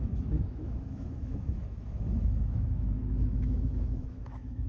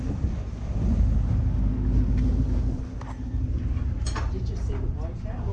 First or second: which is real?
second